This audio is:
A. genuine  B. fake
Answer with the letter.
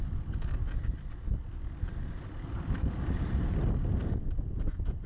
A